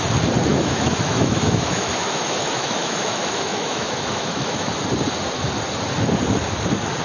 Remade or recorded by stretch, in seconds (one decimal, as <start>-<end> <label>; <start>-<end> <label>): 0.0-0.5 recorded; 0.5-4.7 remade; 4.7-7.0 recorded